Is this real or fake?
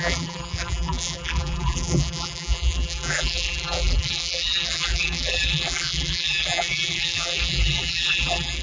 fake